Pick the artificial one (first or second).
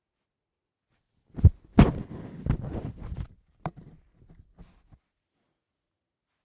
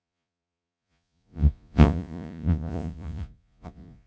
second